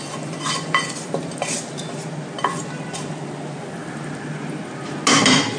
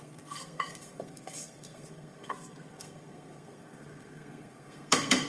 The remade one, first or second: second